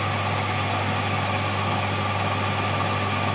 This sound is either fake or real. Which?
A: real